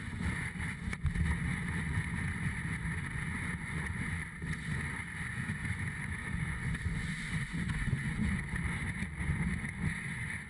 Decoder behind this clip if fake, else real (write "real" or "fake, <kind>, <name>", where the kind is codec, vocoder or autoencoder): fake, vocoder, Vocos